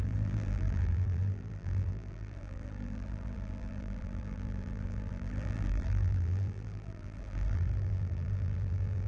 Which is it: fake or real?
fake